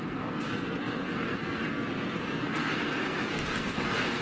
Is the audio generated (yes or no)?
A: yes